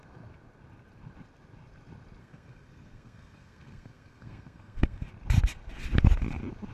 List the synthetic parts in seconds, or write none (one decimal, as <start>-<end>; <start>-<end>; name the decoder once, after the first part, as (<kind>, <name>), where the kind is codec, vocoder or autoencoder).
2.2-5.1 (codec, SNAC)